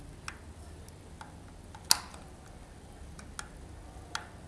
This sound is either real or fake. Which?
real